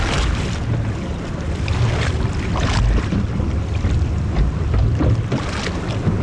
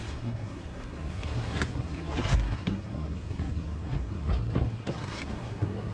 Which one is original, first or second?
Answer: first